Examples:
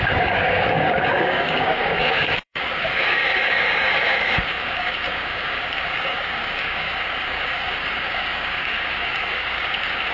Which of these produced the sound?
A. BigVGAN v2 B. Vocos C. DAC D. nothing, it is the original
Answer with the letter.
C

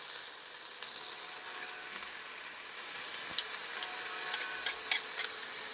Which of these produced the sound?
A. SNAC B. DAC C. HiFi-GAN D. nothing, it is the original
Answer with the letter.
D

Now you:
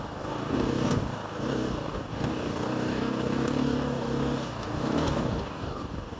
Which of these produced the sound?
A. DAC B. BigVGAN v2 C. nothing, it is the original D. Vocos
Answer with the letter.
A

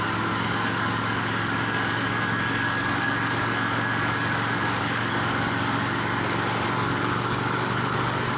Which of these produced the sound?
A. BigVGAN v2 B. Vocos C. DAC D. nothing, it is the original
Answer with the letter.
C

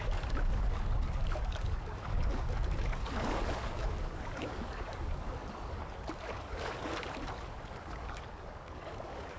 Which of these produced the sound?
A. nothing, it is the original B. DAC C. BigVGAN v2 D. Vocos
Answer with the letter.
B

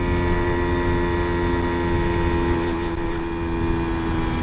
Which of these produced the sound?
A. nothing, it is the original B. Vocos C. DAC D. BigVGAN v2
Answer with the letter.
A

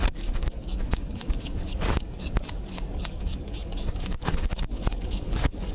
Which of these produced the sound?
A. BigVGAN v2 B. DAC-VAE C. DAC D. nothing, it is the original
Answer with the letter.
C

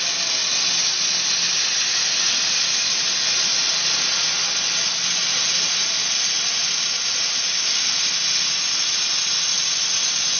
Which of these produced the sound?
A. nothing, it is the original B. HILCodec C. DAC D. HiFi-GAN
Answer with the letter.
A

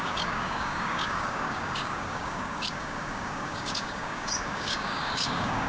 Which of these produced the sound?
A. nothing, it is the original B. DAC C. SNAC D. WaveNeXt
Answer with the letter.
B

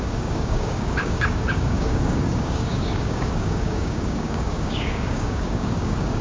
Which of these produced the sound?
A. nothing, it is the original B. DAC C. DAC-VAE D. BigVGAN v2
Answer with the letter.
B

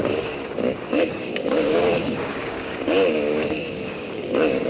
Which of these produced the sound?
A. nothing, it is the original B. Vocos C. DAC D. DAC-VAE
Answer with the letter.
C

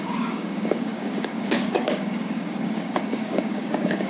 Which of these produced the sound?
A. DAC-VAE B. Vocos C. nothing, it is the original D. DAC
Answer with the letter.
D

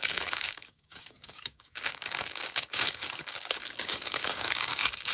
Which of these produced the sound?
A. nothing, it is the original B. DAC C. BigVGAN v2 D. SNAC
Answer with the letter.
B